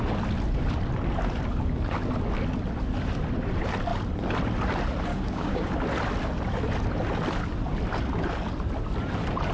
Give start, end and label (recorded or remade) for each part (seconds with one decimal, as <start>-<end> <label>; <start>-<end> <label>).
0.0-5.1 recorded; 5.1-5.8 remade; 5.8-9.5 recorded